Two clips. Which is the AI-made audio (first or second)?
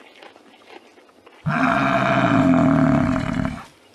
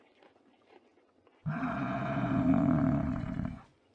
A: second